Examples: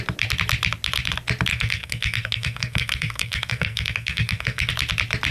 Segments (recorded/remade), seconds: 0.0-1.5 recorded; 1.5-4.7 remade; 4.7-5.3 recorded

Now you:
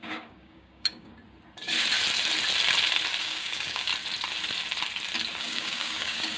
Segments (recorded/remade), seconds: 0.0-1.2 remade; 1.2-3.2 recorded; 3.2-3.9 remade; 3.9-5.4 recorded; 5.4-6.4 remade

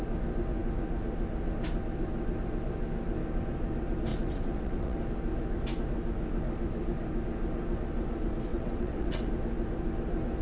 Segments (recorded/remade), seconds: 0.0-4.1 recorded; 4.1-5.0 remade; 5.0-8.5 recorded; 8.5-9.3 remade; 9.3-10.4 recorded

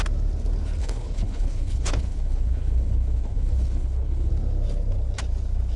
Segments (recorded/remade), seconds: 0.0-0.8 recorded; 0.8-4.3 remade; 4.3-5.8 recorded

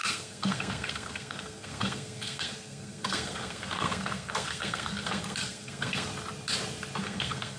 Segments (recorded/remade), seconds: 0.0-6.1 remade; 6.1-7.0 recorded; 7.0-7.6 remade